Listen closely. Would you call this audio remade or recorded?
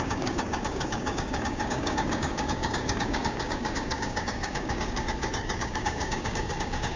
remade